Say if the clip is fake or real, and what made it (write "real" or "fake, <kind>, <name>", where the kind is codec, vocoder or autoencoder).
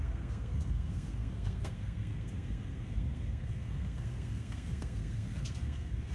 fake, codec, SNAC